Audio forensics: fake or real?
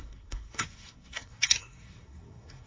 fake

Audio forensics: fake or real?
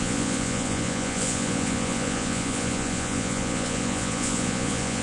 fake